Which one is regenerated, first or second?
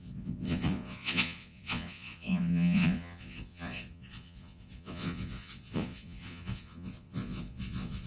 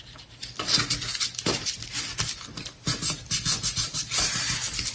first